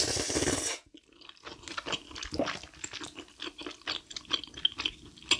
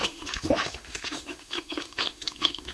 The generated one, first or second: second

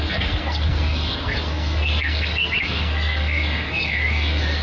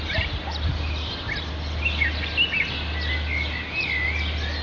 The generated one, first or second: first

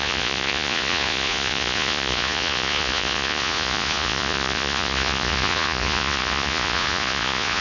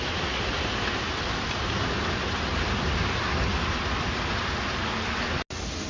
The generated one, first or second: first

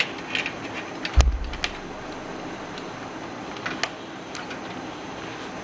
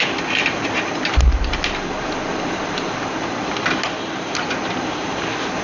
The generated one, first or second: second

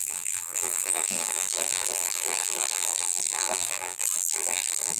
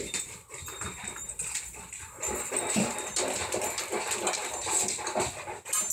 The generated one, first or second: first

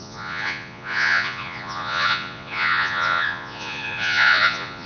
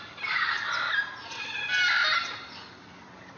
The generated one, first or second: first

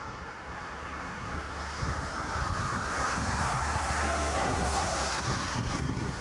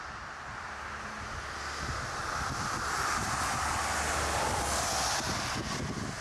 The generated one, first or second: first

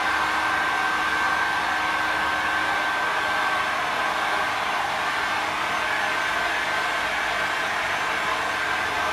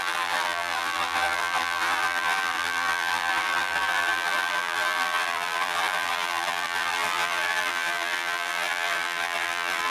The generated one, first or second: second